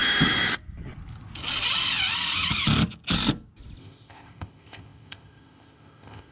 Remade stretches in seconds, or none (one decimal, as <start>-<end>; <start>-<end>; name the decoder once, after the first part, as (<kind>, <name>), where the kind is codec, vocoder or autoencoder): 3.8-6.3 (codec, ZipCodec)